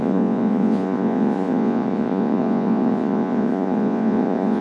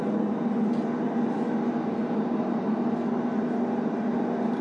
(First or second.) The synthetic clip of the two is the first